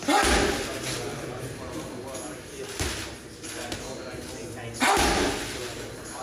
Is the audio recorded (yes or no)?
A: yes